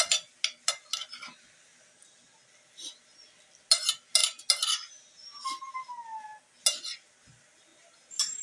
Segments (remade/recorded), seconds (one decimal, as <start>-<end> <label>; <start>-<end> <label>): 0.0-8.4 recorded

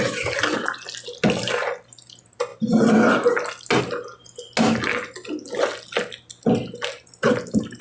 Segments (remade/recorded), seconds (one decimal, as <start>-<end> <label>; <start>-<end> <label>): 0.0-7.8 recorded

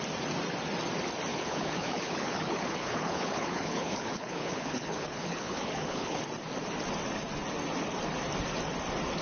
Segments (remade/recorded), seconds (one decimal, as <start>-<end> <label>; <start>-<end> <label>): 0.0-1.3 recorded; 1.3-6.2 remade; 6.2-9.2 recorded

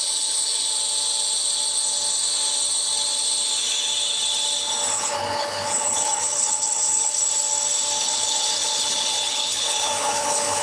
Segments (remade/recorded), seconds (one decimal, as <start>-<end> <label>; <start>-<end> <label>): 0.0-0.7 remade; 0.7-4.9 recorded; 4.9-7.2 remade; 7.2-8.0 recorded; 8.0-10.6 remade